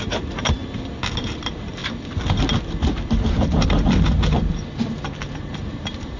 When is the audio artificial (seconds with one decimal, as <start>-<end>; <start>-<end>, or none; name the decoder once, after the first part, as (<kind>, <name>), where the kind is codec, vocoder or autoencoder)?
0.0-0.6 (vocoder, BigVGAN v2); 1.2-1.8; 5.3-6.2